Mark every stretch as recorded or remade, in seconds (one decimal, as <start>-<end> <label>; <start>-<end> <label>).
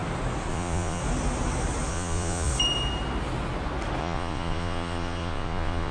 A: 0.0-0.5 recorded; 0.5-1.0 remade; 1.0-1.9 recorded; 1.9-2.5 remade; 2.5-4.0 recorded; 4.0-5.9 remade